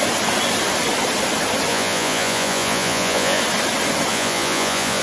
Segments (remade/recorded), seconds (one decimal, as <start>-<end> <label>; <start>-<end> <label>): 0.0-1.7 recorded; 1.7-3.4 remade; 3.4-4.1 recorded; 4.1-5.0 remade